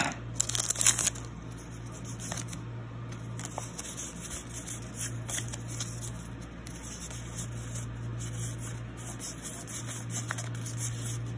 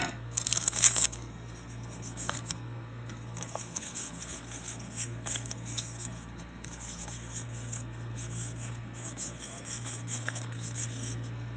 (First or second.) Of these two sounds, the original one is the first